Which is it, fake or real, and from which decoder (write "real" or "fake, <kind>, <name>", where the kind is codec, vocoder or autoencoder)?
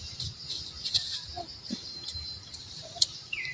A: fake, vocoder, BigVGAN v2